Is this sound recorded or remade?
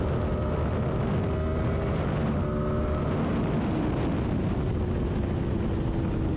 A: recorded